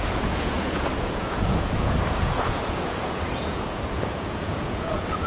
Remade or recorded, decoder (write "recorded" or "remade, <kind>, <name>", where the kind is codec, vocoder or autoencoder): remade, vocoder, Vocos